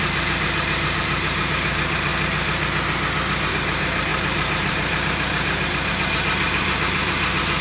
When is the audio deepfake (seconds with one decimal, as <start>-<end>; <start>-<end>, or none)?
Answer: 0.0-2.1; 3.5-7.6